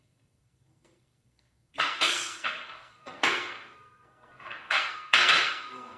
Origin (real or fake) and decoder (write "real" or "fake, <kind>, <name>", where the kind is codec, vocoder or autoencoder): fake, codec, SNAC